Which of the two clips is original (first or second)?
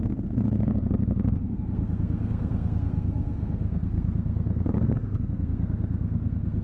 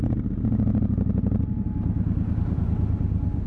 second